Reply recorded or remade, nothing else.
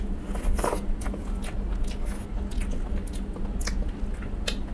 recorded